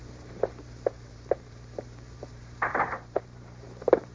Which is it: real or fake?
fake